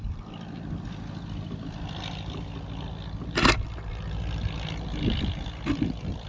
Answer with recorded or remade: recorded